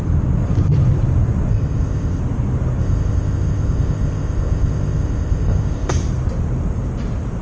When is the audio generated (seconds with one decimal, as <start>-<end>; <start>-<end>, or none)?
1.5-2.2; 2.8-5.9